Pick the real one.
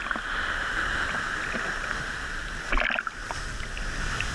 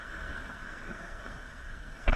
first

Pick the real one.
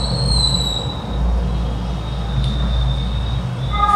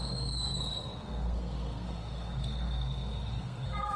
first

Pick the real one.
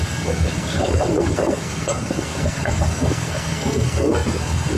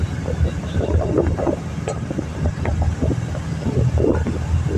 second